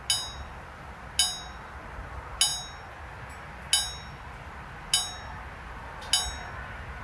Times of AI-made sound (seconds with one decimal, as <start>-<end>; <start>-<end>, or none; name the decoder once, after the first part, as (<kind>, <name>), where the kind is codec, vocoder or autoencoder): none